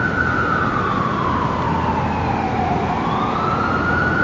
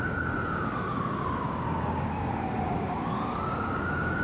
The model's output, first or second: second